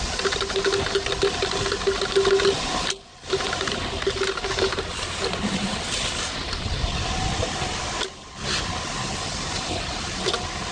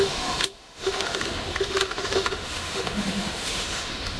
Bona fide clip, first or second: first